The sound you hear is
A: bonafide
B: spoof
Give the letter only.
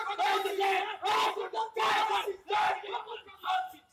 A